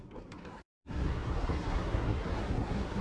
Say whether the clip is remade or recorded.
remade